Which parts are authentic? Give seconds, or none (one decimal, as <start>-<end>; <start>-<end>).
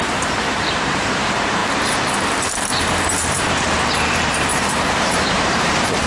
none